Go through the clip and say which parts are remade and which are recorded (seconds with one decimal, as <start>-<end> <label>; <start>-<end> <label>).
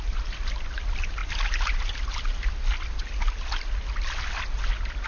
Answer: 0.0-5.1 recorded